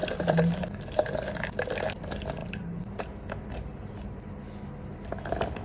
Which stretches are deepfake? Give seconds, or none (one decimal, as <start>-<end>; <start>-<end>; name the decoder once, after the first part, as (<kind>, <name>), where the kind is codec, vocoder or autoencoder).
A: 0.0-1.1 (vocoder, BigVGAN v2); 2.4-4.2